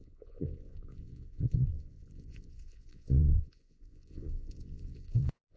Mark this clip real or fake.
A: fake